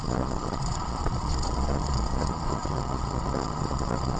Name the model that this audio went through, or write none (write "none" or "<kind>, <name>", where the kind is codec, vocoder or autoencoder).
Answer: vocoder, Vocos